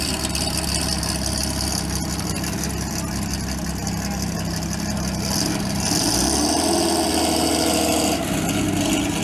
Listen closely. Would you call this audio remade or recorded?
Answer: recorded